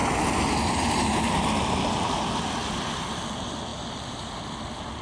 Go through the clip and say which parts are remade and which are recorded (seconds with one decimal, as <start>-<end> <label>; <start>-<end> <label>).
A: 0.0-1.2 remade; 1.2-2.6 recorded; 2.6-3.2 remade; 3.2-3.7 recorded; 3.7-5.0 remade